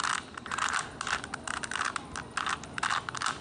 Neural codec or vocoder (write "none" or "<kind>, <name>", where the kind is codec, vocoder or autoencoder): none